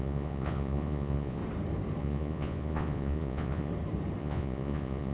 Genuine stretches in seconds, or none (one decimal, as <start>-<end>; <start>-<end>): 1.4-2.0; 3.7-4.2